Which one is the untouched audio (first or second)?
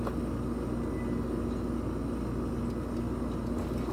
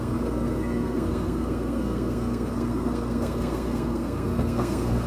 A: first